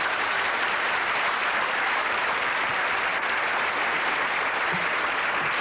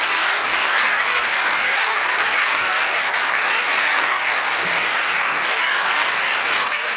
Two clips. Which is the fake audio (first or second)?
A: second